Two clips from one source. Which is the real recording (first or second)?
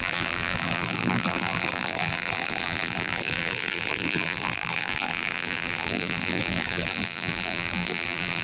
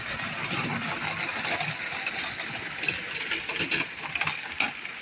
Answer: second